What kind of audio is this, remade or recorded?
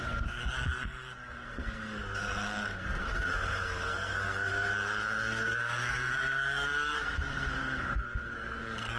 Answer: remade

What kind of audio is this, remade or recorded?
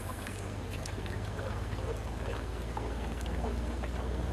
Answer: remade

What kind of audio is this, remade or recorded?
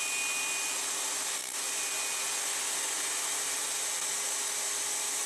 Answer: recorded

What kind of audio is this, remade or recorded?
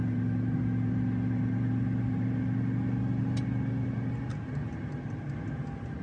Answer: recorded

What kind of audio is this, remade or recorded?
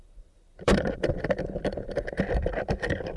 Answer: remade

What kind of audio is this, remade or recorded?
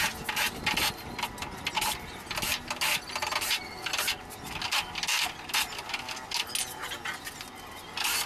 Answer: recorded